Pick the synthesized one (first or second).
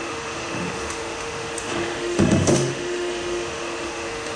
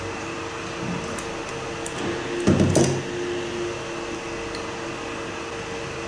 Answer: first